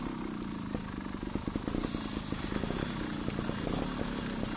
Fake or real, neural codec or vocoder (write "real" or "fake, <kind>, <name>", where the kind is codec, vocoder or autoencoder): real